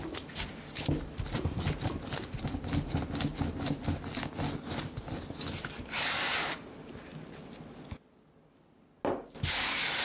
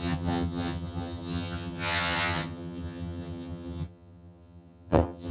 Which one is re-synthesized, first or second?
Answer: second